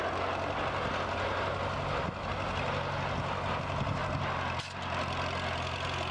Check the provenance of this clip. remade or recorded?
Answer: recorded